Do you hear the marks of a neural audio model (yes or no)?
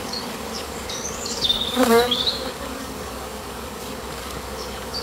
yes